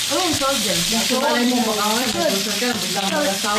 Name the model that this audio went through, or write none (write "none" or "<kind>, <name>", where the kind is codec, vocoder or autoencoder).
vocoder, BigVGAN v2